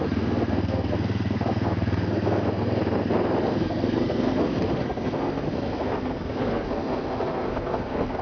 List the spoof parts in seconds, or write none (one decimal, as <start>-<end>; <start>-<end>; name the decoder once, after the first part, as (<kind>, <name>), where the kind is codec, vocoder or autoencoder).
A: 0.0-2.8 (codec, SNAC); 3.5-8.2